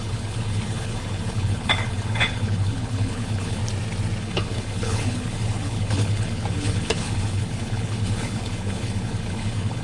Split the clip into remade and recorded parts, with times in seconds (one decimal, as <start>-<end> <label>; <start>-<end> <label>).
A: 0.0-3.6 remade; 3.6-4.2 recorded; 4.2-9.8 remade